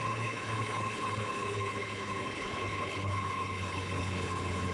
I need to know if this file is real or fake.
fake